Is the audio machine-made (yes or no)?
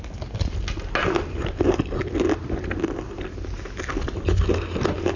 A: no